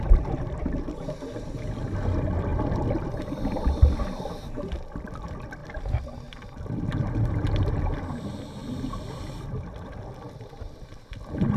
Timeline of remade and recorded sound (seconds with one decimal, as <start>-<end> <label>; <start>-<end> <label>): 0.0-11.6 recorded

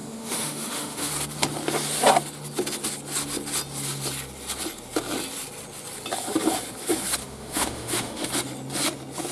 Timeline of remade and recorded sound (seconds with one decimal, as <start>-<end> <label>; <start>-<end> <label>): 0.0-1.1 remade; 1.1-7.2 recorded; 7.2-8.3 remade; 8.3-9.3 recorded

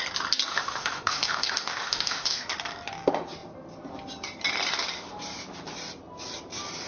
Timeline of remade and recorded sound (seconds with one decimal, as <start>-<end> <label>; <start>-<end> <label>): 0.0-0.5 recorded; 0.5-2.5 remade; 2.5-6.9 recorded

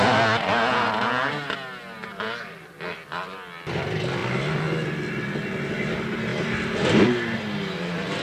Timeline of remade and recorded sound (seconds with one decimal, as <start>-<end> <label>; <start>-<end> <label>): 0.0-8.2 recorded

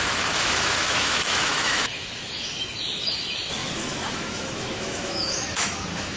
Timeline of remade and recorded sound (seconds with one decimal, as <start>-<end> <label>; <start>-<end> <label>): 0.0-6.2 remade

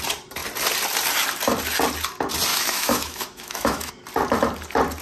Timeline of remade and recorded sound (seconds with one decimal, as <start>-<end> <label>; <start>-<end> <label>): 0.0-2.5 recorded; 2.5-3.9 remade; 3.9-5.0 recorded

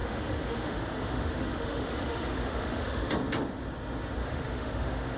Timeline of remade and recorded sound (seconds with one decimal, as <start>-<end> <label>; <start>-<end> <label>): 0.0-3.1 remade; 3.1-4.2 recorded; 4.2-5.2 remade